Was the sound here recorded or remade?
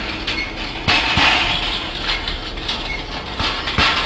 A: recorded